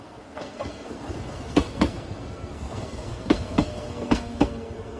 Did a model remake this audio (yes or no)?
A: yes